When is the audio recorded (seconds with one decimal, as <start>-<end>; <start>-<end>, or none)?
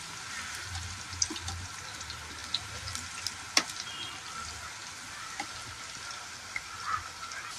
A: 0.0-7.6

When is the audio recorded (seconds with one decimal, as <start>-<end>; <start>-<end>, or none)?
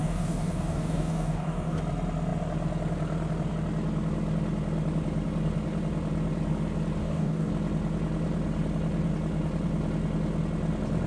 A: 1.8-7.0; 7.5-11.1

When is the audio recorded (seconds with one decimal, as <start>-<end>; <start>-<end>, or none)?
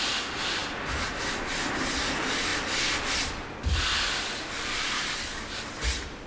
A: 0.0-6.3